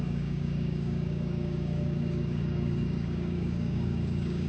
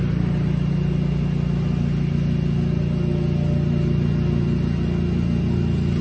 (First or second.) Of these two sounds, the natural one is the second